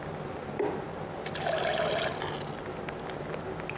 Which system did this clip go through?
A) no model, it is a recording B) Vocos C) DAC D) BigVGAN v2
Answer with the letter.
A